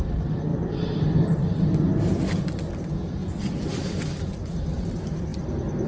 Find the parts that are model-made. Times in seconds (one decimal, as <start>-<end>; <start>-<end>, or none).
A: 0.5-1.4; 3.2-4.0